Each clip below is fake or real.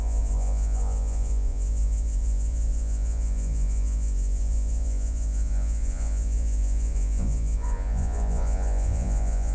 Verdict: fake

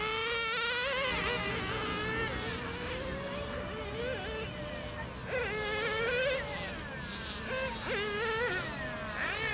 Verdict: real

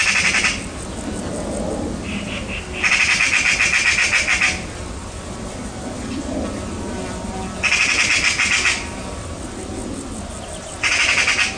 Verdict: real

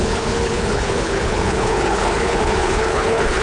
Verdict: fake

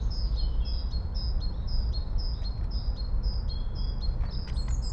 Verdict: real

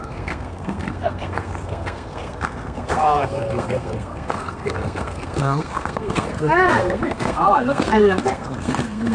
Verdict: fake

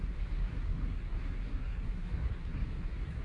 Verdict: fake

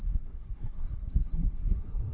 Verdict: fake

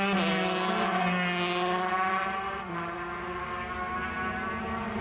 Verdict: real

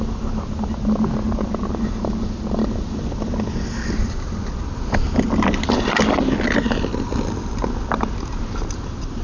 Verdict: real